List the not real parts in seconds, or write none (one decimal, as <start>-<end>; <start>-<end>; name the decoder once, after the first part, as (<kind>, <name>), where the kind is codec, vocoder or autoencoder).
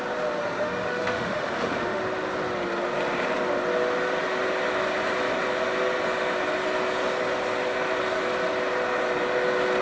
0.4-2.0 (autoencoder, DAC-VAE)